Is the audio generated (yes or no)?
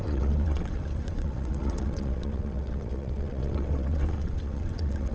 yes